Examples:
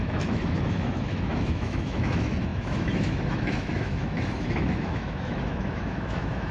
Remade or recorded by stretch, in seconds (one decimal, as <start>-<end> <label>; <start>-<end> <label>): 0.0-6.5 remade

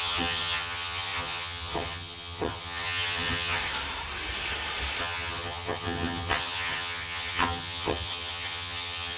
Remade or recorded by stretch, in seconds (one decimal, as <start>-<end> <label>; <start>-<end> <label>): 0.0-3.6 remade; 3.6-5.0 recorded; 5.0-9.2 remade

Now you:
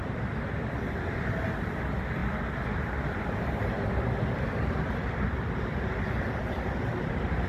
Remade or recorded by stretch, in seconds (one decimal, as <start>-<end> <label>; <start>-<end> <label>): 0.0-7.5 recorded

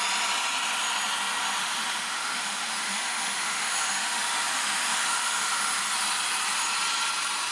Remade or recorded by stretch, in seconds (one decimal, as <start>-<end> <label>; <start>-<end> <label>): 0.0-1.6 recorded; 1.6-5.8 remade; 5.8-7.5 recorded